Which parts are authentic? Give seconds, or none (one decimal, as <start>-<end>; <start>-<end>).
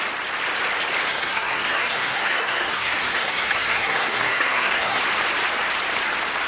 0.0-1.1; 5.0-6.5